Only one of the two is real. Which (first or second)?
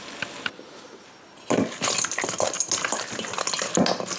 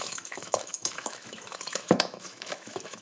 first